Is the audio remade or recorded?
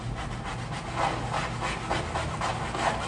recorded